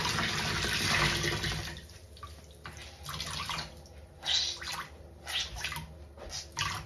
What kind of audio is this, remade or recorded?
recorded